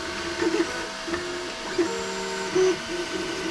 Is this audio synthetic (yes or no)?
no